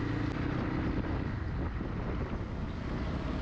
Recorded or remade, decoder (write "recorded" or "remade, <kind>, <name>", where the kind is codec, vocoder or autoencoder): recorded